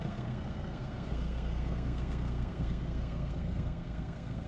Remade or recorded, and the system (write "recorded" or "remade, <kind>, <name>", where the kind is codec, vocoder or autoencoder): remade, codec, SNAC